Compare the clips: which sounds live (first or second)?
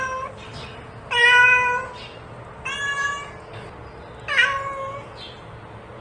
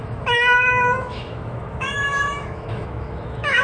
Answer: first